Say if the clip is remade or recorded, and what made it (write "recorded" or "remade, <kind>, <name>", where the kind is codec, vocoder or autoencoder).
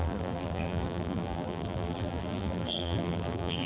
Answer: remade, vocoder, BigVGAN v2